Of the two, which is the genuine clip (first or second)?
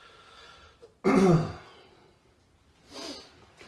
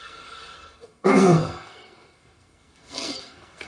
first